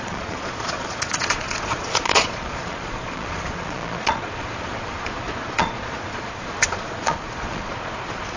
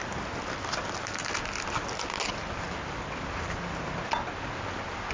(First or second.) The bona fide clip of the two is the second